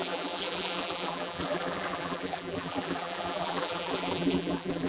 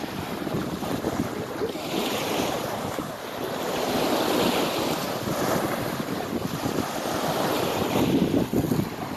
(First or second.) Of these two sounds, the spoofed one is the first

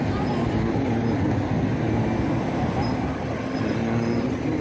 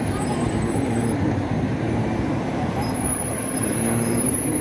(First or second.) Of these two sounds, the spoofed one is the second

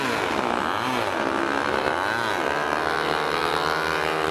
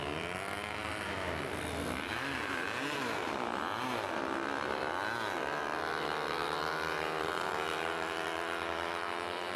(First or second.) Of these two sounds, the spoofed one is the second